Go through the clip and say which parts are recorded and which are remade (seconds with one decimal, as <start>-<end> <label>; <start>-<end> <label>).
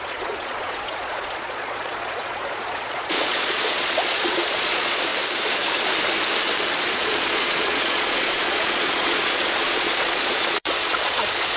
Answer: 0.0-5.1 remade; 5.1-6.9 recorded; 6.9-11.6 remade